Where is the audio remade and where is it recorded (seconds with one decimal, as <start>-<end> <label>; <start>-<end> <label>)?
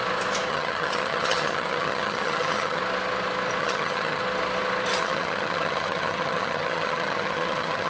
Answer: 0.0-0.5 recorded; 0.5-2.8 remade; 2.8-3.6 recorded; 3.6-4.2 remade; 4.2-5.0 recorded; 5.0-7.9 remade